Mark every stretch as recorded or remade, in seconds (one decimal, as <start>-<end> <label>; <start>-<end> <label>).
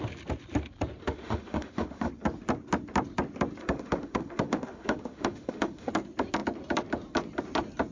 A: 0.0-1.0 recorded; 1.0-2.1 remade; 2.1-3.6 recorded; 3.6-5.9 remade; 5.9-7.9 recorded